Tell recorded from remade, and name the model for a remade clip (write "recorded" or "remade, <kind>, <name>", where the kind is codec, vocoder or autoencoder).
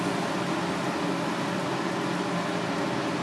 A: recorded